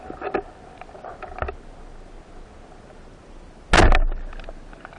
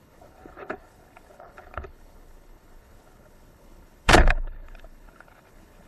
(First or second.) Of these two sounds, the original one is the first